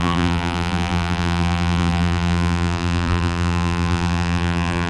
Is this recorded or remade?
remade